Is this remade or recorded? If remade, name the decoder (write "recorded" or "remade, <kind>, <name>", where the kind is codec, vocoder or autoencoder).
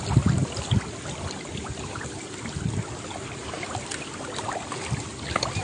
recorded